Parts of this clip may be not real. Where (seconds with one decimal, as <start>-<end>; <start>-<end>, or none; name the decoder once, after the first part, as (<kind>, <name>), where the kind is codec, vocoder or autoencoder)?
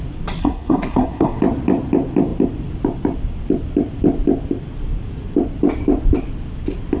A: 0.4-1.4 (codec, SNAC)